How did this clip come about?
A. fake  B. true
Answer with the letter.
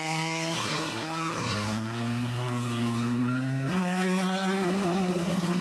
A